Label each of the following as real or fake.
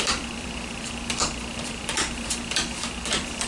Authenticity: fake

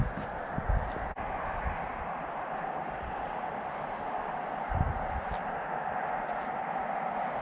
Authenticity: fake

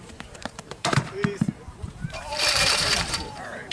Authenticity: fake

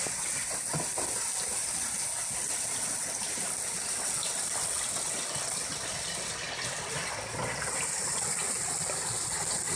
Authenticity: real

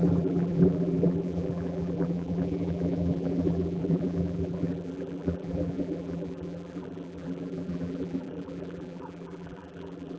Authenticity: fake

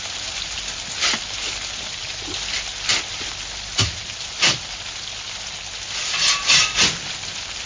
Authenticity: real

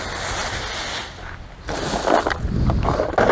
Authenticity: real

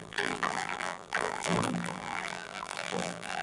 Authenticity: fake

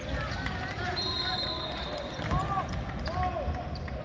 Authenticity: real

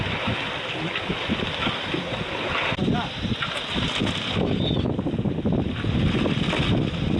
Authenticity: real